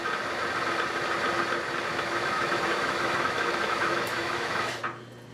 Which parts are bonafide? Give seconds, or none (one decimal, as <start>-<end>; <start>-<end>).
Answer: 0.0-1.9; 4.8-5.3